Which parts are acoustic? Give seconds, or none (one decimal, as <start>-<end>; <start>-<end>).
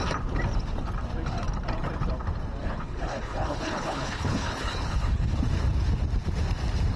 0.0-2.6; 5.4-7.0